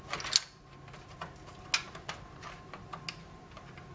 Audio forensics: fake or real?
real